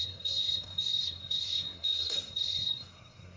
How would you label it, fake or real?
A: fake